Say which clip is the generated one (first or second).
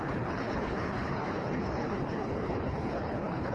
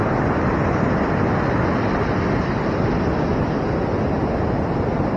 first